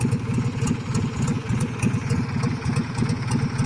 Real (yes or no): no